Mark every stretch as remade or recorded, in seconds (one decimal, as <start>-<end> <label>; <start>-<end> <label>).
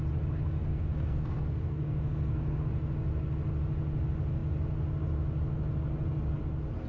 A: 0.0-0.7 recorded; 0.7-2.6 remade; 2.6-6.9 recorded